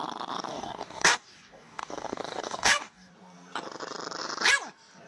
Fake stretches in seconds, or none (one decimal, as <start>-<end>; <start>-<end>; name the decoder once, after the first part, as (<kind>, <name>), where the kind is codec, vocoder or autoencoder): 0.5-3.1 (codec, DAC)